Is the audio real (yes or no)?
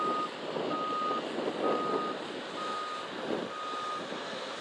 yes